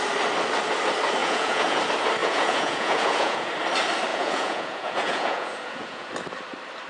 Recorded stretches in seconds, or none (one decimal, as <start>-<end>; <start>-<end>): 0.0-1.2; 1.8-2.2; 3.5-4.1; 6.1-6.9